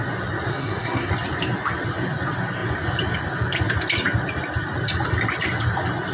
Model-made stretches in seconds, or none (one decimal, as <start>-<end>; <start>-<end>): 0.5-1.1